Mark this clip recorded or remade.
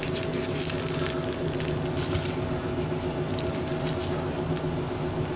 recorded